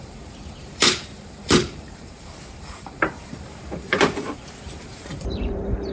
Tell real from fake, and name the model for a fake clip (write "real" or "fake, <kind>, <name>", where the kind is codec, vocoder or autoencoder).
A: fake, vocoder, BigVGAN v2